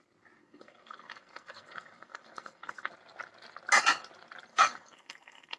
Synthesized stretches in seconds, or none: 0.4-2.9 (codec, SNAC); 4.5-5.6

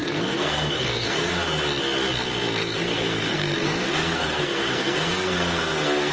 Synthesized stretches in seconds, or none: 0.0-1.3 (codec, SNAC); 2.6-6.1

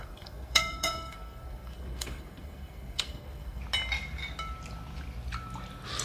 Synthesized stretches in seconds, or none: 0.0-3.6 (codec, SNAC)

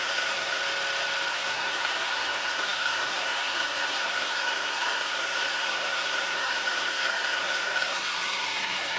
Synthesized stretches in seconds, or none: 0.0-0.6 (codec, SNAC); 1.3-9.0

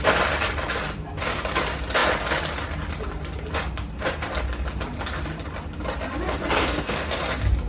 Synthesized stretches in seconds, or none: 6.6-7.2 (codec, SNAC)

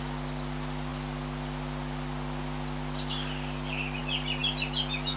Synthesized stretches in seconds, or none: none

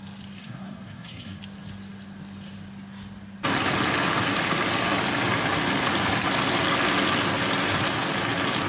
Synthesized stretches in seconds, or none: 0.4-1.4 (codec, SNAC)